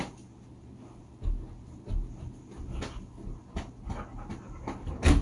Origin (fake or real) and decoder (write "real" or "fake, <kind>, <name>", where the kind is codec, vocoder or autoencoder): real